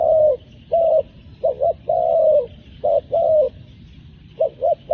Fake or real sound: real